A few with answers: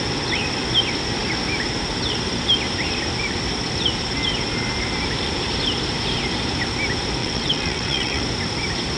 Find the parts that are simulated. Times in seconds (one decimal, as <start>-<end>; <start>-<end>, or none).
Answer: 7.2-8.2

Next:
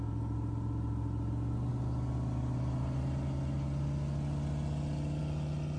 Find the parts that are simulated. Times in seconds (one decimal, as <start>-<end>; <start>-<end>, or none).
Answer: none

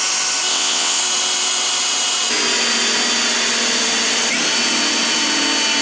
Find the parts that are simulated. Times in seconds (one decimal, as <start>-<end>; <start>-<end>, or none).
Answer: 0.5-1.0

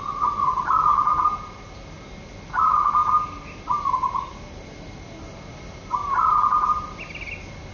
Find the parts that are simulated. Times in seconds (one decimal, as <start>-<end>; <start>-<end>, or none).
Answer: none

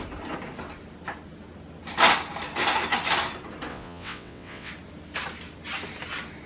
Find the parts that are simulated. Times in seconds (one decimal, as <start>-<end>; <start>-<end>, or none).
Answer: 3.7-4.7

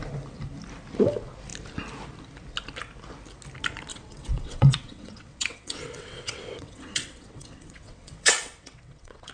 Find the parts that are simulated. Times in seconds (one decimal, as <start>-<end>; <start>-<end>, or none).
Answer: 3.9-9.3

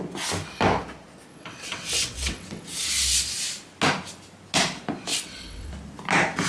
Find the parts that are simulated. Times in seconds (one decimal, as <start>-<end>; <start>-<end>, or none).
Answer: 1.3-2.9; 5.1-5.7